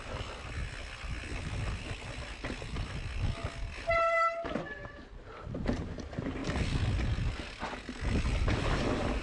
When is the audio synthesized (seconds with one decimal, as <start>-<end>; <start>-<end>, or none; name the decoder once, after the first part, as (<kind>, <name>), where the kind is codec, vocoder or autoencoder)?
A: none